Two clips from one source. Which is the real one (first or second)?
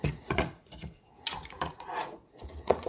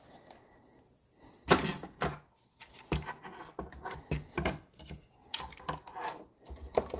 second